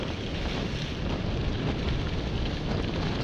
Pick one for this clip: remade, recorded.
recorded